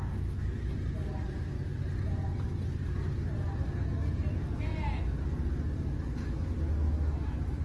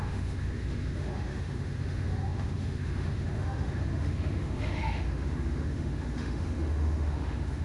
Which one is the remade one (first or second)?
second